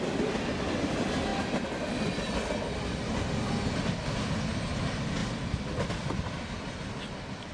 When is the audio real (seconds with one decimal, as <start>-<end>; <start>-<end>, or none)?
0.0-5.2; 6.8-7.5